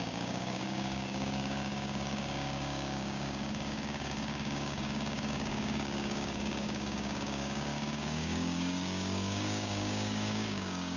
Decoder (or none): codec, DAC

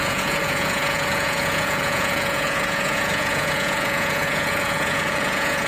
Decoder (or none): vocoder, Vocos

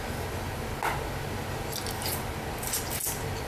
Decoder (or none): none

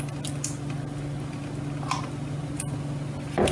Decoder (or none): none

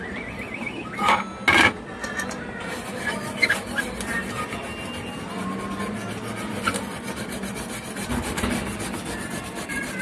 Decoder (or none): none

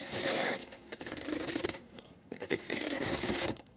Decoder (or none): codec, SNAC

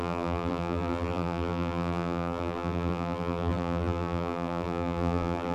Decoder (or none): vocoder, BigVGAN v2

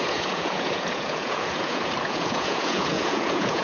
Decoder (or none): vocoder, Vocos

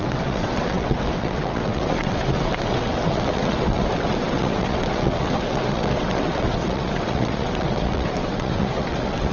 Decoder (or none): vocoder, WaveNeXt